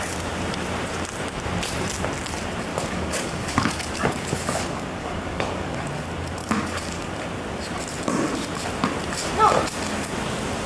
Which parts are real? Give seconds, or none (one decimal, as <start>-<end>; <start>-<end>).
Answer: 0.0-2.7; 5.9-6.4; 7.1-10.7